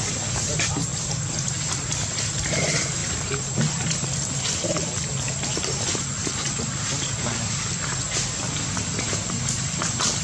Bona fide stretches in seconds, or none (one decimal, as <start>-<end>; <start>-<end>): 0.0-10.2